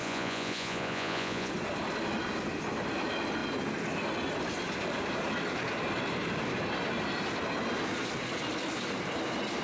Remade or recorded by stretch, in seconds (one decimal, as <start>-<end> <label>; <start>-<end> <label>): 0.0-1.5 remade; 1.5-9.6 recorded